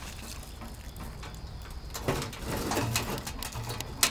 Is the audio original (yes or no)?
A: yes